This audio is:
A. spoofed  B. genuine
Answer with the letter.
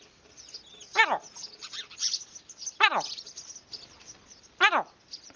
B